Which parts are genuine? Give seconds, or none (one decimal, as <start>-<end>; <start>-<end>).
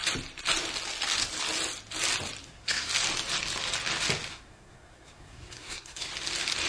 0.0-2.4; 2.9-4.3; 6.1-6.7